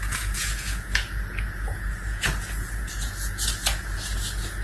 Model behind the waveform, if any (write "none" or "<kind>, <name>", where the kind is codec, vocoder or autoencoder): vocoder, Vocos